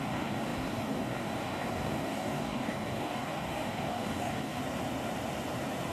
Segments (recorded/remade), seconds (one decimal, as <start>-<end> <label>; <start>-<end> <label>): 0.0-4.6 remade; 4.6-5.9 recorded